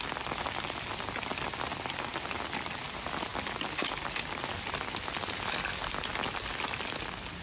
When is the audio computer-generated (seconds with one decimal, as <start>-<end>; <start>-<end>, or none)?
none